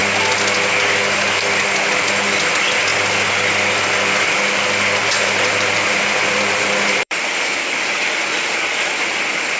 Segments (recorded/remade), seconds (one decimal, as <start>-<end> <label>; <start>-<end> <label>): 0.0-5.0 recorded; 5.0-7.2 remade; 7.2-9.6 recorded